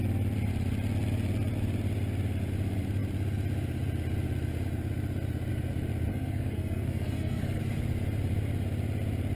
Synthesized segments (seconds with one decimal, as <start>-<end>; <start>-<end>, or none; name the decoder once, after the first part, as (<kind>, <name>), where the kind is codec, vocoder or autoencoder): 6.1-7.6 (codec, SNAC)

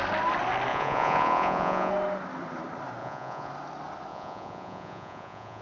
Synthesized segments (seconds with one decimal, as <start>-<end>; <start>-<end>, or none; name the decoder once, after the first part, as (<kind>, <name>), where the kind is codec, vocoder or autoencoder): 0.7-1.9 (vocoder, Vocos); 3.0-3.5; 4.1-5.6

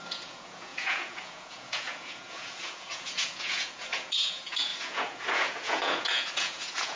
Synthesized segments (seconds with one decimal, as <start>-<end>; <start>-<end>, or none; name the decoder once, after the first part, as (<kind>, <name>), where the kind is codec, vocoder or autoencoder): 0.0-7.0 (vocoder, Vocos)